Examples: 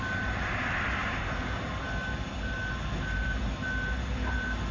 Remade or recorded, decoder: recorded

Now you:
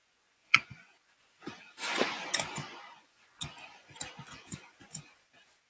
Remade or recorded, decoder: remade, vocoder, Vocos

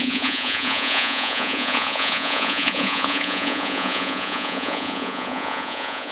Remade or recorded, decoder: remade, vocoder, Vocos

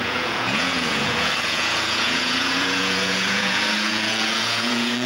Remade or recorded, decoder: remade, vocoder, Vocos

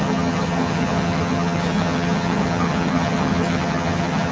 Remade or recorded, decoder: remade, vocoder, HiFi-GAN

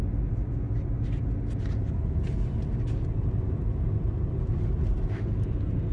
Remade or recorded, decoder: recorded